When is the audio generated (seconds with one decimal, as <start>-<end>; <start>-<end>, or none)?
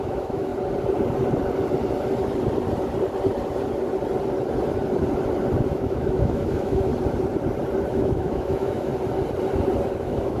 0.0-0.5; 5.7-6.9; 7.9-8.9; 10.0-10.4